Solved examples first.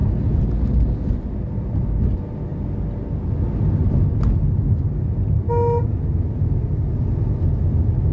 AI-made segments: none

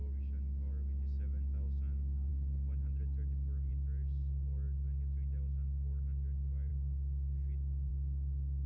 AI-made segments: none

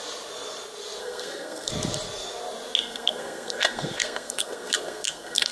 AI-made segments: 1.0-1.7 (codec, SNAC); 2.8-5.5

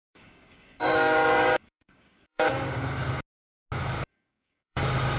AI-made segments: 0.0-2.8 (codec, DAC); 4.1-4.8